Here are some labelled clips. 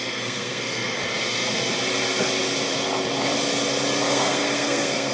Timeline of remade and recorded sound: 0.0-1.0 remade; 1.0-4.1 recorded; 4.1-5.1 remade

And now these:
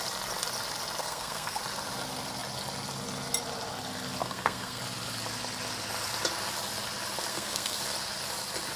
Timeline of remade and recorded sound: 0.0-1.0 recorded; 1.0-1.6 remade; 1.6-4.2 recorded; 4.2-4.8 remade; 4.8-7.3 recorded; 7.3-7.8 remade; 7.8-8.8 recorded